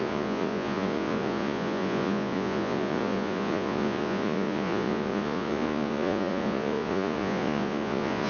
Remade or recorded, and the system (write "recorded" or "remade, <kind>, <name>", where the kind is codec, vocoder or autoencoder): remade, vocoder, Vocos